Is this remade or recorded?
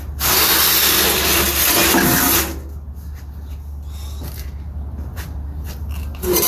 recorded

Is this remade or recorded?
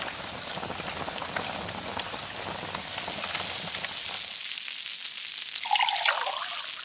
recorded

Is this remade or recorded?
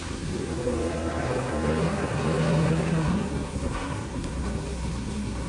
remade